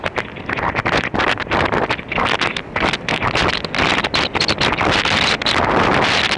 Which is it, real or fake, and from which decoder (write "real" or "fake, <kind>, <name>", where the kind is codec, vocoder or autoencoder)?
real